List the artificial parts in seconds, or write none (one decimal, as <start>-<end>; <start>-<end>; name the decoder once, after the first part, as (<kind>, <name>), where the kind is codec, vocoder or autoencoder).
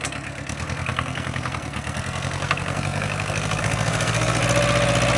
0.0-4.4 (codec, SNAC)